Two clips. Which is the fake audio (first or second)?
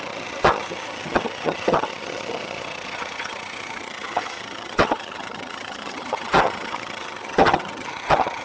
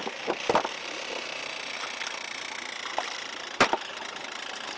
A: first